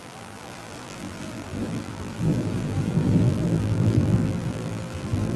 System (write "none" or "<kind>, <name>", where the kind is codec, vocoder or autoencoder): vocoder, BigVGAN v2